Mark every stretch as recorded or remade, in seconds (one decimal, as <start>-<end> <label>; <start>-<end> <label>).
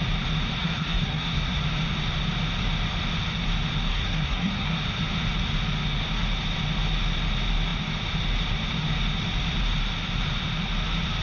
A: 0.0-0.6 recorded; 0.6-1.6 remade; 1.6-3.9 recorded; 3.9-4.8 remade; 4.8-11.2 recorded